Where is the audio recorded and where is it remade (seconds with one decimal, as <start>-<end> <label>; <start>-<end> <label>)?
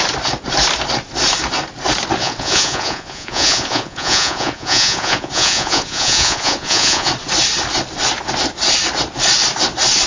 0.0-2.2 recorded; 2.2-7.1 remade; 7.1-10.1 recorded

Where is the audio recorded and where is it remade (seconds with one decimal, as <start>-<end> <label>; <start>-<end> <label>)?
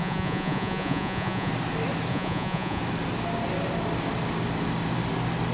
0.0-1.5 remade; 1.5-2.1 recorded; 2.1-2.8 remade; 2.8-5.5 recorded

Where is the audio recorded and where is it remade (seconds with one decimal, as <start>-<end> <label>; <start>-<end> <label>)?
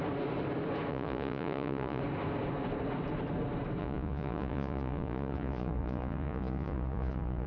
0.0-0.9 recorded; 0.9-2.0 remade; 2.0-3.8 recorded; 3.8-7.5 remade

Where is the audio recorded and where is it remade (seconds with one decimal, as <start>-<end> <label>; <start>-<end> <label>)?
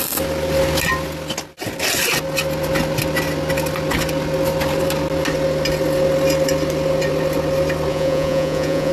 0.0-7.9 recorded; 7.9-8.9 remade